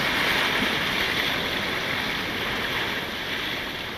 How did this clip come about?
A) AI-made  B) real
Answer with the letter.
B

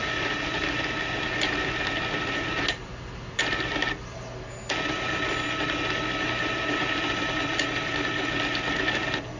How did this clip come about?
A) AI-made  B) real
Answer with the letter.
B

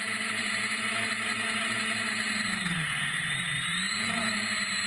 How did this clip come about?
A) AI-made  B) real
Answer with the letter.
A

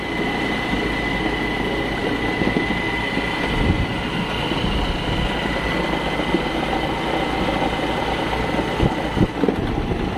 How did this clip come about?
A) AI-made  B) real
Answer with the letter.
B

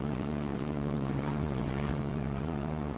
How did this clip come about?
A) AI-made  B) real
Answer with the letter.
A